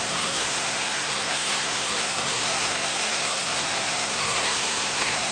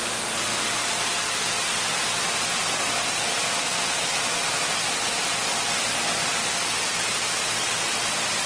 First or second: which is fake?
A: first